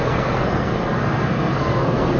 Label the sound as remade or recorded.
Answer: remade